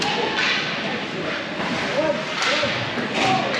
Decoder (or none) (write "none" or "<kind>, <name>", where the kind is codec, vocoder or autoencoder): none